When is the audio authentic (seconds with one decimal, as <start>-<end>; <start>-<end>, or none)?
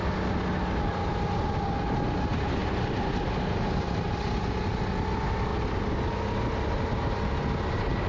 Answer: 0.0-8.1